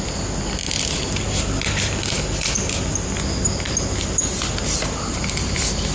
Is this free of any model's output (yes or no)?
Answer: yes